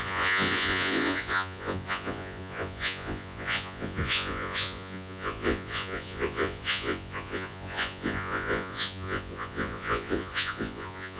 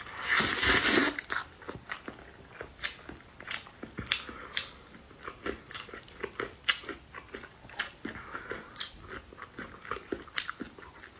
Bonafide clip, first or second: second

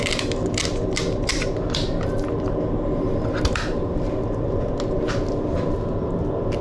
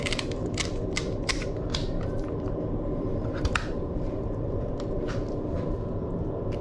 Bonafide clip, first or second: first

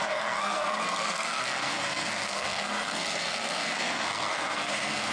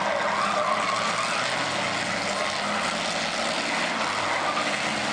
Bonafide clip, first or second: second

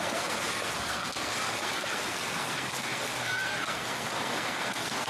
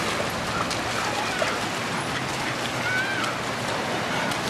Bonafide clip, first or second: second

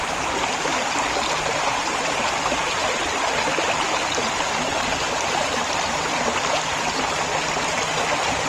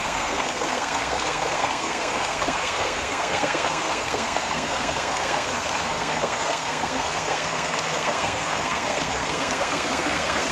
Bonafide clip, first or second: first